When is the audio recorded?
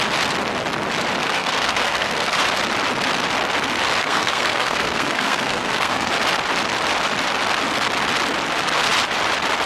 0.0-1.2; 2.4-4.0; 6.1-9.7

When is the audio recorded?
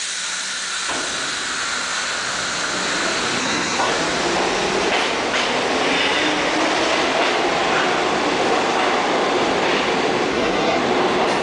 0.0-3.4; 3.9-10.3; 10.8-11.4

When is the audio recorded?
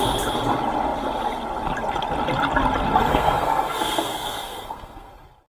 0.0-3.1; 5.1-5.5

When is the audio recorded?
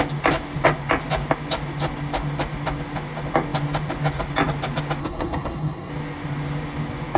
0.0-5.0; 5.9-7.2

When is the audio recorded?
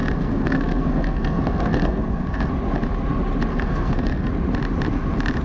2.5-3.5; 4.3-5.4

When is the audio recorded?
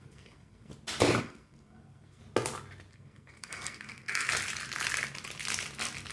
0.7-1.2; 2.2-2.9; 4.3-6.1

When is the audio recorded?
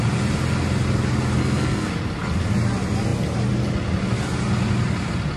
0.0-1.4; 1.9-5.4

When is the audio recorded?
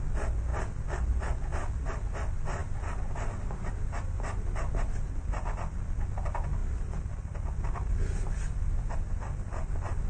0.0-10.1